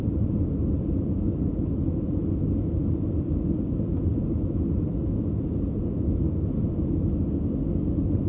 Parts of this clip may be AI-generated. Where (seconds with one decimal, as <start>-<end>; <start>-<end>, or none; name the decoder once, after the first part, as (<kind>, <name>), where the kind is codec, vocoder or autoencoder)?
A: none